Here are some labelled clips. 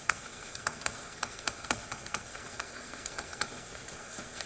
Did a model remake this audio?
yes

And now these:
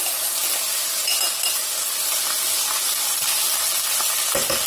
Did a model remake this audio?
no